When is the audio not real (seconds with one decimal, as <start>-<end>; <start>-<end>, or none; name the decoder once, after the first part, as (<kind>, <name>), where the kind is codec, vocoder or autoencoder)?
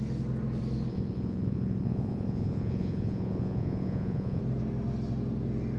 0.9-4.4 (vocoder, Vocos)